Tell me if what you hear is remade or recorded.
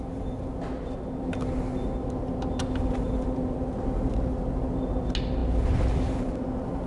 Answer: recorded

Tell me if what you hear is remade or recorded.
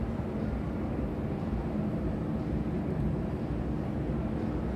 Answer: recorded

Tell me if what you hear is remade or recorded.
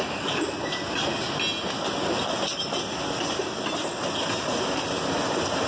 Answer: recorded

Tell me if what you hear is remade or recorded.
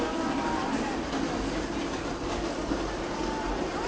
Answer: recorded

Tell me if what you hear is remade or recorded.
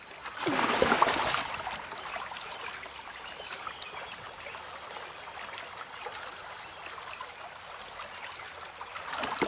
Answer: recorded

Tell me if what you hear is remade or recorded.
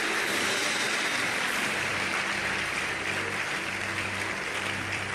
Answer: remade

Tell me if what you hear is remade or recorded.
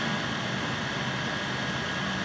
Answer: recorded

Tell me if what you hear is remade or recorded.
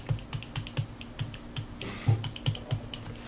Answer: recorded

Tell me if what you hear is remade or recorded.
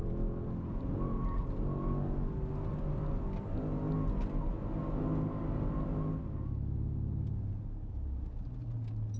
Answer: recorded